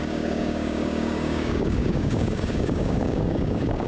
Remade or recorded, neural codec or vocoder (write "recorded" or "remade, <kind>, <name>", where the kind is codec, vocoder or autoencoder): remade, codec, DAC